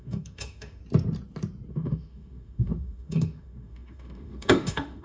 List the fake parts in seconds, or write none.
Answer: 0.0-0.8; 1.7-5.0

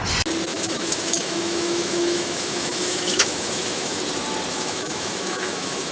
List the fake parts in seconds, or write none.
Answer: 0.5-4.0; 4.5-5.9

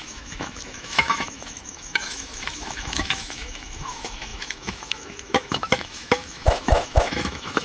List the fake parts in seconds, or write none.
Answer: 0.0-7.6

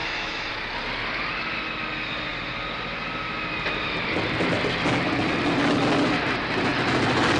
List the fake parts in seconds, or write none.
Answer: 0.0-0.5